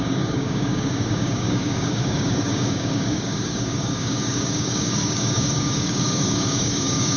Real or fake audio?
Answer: fake